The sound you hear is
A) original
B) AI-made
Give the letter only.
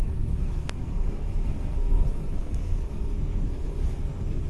B